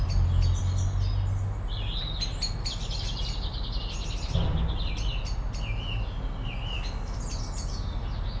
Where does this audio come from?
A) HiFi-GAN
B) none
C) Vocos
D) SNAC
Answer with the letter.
B